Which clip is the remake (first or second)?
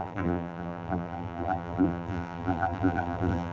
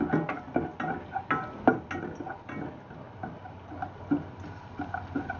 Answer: first